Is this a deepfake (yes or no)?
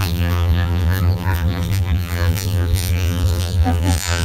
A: yes